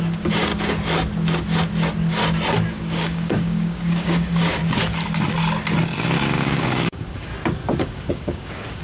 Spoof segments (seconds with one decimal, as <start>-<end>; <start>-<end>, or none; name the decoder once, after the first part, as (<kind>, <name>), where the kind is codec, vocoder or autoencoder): 0.0-0.5 (codec, DAC); 2.7-4.6; 6.4-7.3; 7.8-8.8